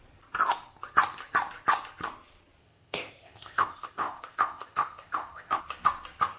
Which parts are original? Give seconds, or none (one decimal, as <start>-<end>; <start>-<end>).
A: 0.0-2.6; 5.6-6.4